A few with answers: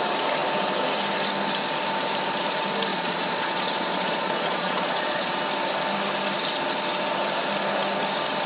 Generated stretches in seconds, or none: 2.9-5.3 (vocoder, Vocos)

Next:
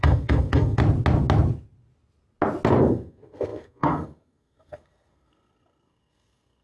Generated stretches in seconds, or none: 0.0-0.8 (codec, SNAC); 2.8-6.6

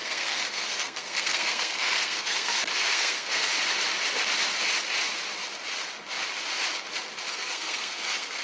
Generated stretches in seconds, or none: 0.0-3.5 (codec, SNAC); 7.3-8.4

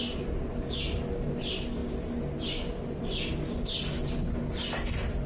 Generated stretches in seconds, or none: none

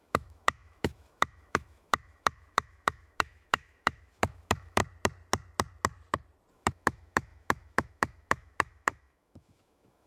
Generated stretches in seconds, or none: 0.0-4.8 (autoencoder, DAC-VAE); 6.5-10.1

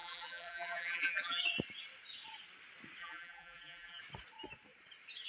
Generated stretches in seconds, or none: 0.0-1.4 (vocoder, BigVGAN v2); 3.0-4.0

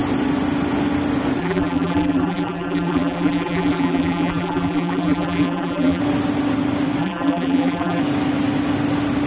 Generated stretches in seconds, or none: 1.4-6.0 (vocoder, BigVGAN v2); 7.0-8.0